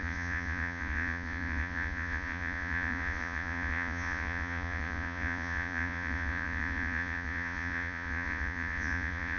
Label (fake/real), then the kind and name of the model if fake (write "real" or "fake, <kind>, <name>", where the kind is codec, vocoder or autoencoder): fake, vocoder, Vocos